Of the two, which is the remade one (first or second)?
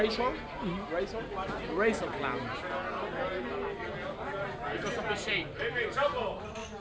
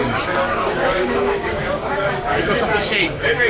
second